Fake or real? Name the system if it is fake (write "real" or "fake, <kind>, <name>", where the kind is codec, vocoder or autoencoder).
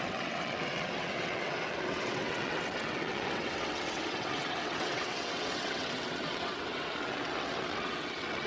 fake, vocoder, WaveNeXt